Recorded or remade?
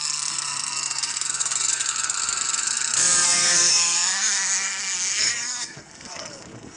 remade